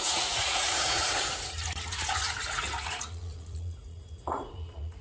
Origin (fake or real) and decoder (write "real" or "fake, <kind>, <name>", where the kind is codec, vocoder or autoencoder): fake, vocoder, Vocos